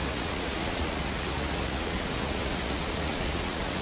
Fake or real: fake